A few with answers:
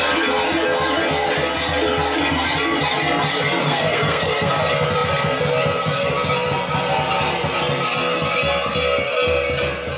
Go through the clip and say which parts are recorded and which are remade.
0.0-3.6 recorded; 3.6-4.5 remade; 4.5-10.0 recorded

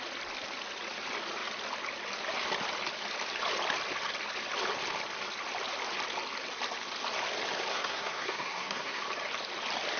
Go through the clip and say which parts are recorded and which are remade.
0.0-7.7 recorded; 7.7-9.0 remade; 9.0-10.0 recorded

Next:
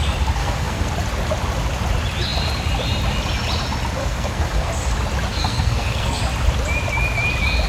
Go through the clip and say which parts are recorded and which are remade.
0.0-0.4 recorded; 0.4-0.9 remade; 0.9-4.0 recorded; 4.0-4.7 remade; 4.7-5.3 recorded; 5.3-6.2 remade; 6.2-7.7 recorded